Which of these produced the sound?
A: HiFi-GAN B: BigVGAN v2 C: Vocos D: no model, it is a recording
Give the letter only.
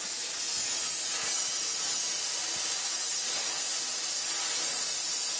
D